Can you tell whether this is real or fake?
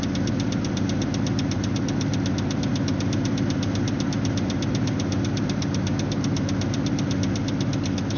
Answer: real